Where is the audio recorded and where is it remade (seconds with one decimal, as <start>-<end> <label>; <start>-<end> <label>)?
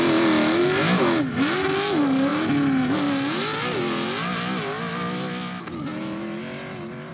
0.0-7.1 recorded